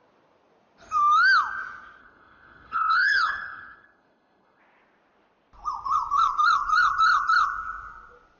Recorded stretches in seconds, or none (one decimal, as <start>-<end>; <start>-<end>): 0.0-2.0; 4.6-8.4